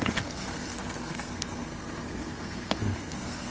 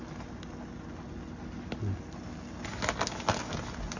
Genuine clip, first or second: second